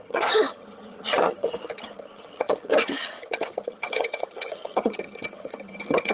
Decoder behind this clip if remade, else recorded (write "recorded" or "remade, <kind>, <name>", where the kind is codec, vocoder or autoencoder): remade, vocoder, HiFi-GAN